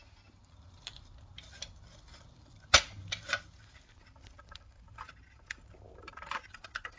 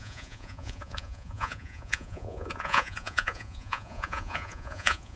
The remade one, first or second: second